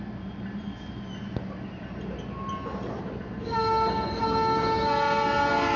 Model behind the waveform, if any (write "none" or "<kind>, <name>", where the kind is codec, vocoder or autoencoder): none